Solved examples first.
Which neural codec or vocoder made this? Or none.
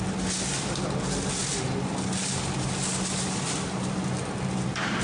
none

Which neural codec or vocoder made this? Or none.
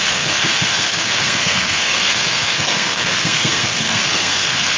codec, SNAC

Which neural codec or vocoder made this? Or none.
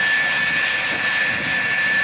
none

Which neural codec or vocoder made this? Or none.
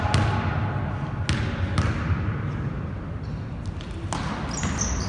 none